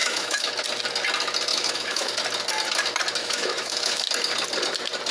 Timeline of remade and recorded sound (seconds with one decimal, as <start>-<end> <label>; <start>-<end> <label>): 0.0-0.5 remade; 0.5-1.5 recorded; 1.5-2.1 remade; 2.1-3.2 recorded; 3.2-4.0 remade; 4.0-5.1 recorded